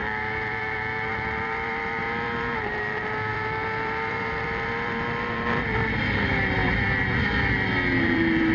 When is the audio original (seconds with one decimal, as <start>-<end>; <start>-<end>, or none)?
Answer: 6.6-8.0

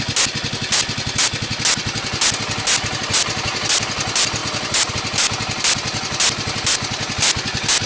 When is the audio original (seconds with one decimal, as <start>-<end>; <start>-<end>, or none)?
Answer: 0.0-7.9